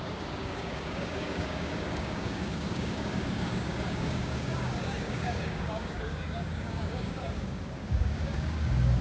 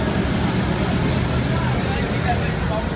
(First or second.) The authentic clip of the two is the second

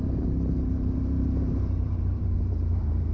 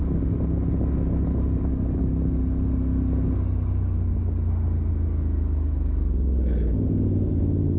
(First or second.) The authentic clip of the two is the second